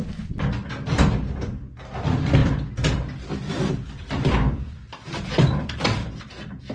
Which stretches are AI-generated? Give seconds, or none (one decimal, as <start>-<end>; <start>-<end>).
2.4-6.3